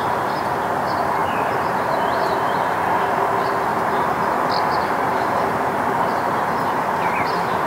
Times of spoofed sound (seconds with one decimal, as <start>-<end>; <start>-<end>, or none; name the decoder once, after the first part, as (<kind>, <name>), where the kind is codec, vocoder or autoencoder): 1.2-3.0 (vocoder, BigVGAN v2); 3.7-4.5; 5.1-6.6